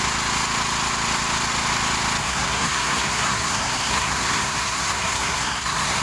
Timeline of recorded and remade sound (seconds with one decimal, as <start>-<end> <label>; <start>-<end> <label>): 0.0-2.2 recorded; 2.2-6.0 remade